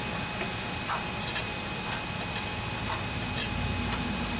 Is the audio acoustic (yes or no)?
no